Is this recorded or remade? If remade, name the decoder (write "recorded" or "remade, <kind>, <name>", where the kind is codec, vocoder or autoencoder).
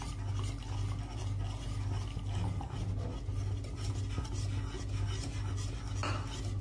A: recorded